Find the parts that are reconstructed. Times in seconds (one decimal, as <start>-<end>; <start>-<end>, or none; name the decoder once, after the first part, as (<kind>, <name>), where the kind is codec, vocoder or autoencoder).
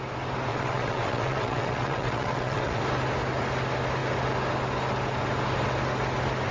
0.5-2.8 (vocoder, WaveNeXt)